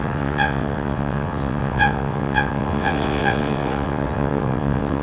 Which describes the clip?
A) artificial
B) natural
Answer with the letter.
A